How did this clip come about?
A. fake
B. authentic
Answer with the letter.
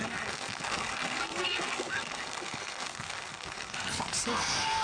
A